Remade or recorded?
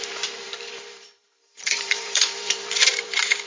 remade